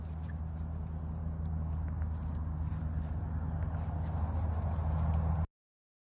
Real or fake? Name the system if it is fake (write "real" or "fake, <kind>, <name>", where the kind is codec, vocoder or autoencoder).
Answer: real